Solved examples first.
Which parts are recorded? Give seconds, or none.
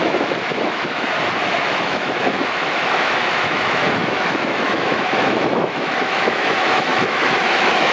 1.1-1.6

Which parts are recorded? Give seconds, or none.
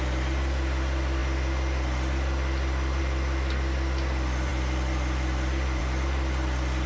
0.0-6.9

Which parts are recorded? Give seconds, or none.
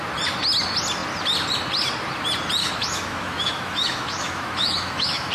0.0-2.6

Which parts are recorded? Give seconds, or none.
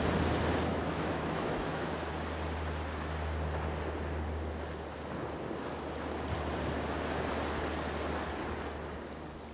0.0-0.7; 2.1-9.5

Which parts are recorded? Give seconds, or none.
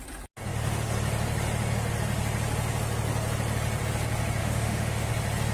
0.0-4.4; 5.1-5.5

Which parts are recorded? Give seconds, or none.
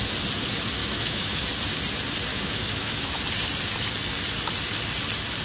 0.0-0.8; 1.4-2.3; 3.2-5.4